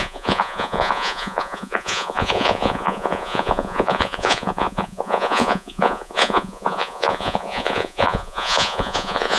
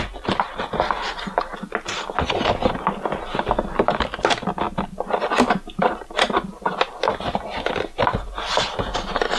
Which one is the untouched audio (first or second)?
second